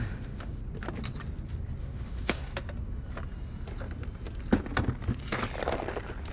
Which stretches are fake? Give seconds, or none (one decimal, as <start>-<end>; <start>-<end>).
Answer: 0.0-0.6; 1.8-2.4